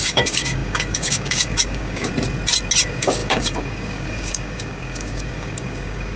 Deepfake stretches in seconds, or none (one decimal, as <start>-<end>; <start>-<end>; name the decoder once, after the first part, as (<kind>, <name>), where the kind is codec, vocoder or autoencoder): 0.0-2.1 (codec, DAC); 2.8-6.2

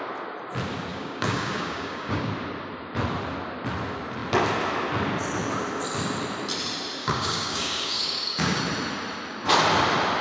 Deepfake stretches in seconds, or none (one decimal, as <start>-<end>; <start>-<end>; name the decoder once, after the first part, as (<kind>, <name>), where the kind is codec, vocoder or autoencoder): 0.9-2.3 (codec, DAC); 7.0-8.6

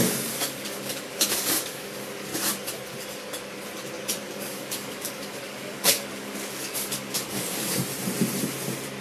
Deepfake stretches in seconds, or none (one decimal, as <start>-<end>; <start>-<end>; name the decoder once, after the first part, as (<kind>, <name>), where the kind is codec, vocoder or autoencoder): 0.0-2.3 (codec, DAC); 4.2-7.9

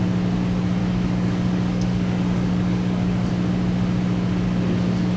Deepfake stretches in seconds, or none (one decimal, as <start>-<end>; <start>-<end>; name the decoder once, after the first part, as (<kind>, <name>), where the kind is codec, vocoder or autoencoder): 0.8-3.3 (codec, DAC)

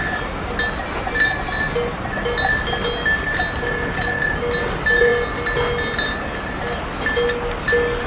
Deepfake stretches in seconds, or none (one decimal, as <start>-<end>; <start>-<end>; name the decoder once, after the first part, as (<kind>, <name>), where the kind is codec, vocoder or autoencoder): 0.0-0.5 (codec, DAC)